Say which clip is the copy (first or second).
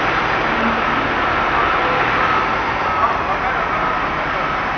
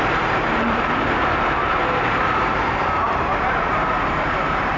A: second